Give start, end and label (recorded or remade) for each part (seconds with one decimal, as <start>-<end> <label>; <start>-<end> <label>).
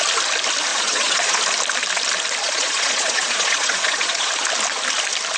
0.0-0.7 recorded; 0.7-1.4 remade; 1.4-2.4 recorded; 2.4-4.3 remade; 4.3-5.4 recorded